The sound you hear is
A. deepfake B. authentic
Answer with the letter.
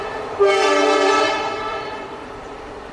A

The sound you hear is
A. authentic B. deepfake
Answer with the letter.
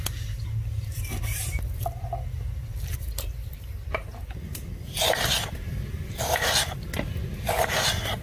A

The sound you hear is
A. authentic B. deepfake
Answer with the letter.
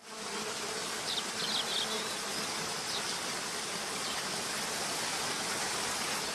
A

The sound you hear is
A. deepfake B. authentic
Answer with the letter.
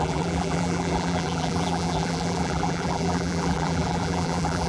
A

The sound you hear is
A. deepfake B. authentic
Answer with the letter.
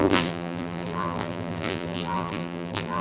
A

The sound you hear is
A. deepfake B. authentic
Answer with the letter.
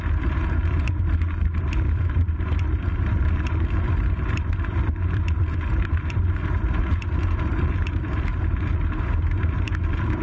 A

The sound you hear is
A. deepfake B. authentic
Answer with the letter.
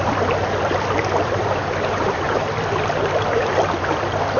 A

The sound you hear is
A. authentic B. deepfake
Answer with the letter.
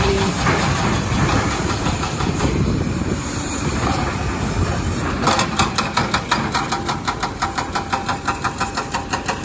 B